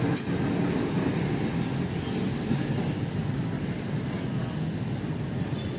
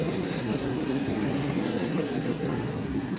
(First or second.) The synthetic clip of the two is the second